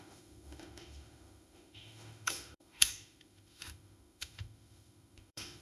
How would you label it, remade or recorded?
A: remade